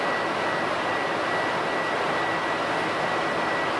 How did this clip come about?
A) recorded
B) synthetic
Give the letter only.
A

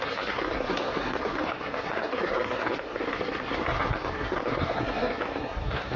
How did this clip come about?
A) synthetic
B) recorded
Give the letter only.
A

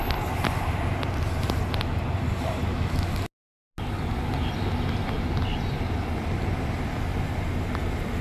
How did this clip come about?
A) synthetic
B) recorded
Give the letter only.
B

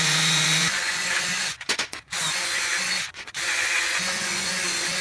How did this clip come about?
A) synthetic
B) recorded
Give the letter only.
A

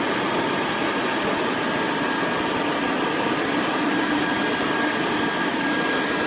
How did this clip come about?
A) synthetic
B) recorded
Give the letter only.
B